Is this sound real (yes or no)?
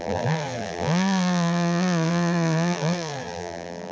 no